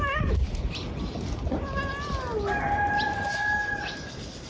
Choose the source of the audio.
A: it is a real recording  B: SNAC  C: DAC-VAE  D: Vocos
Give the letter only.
A